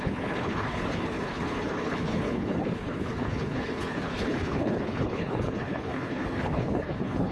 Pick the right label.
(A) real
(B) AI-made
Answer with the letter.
B